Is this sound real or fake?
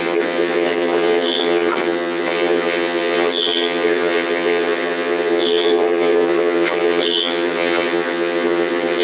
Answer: fake